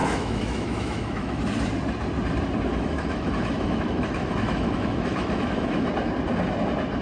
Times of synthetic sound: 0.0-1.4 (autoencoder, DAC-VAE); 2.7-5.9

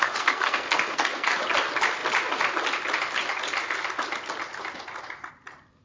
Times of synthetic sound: 0.0-1.3 (codec, SNAC)

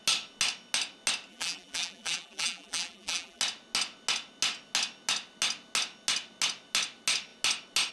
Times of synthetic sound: 1.3-3.4 (vocoder, BigVGAN v2)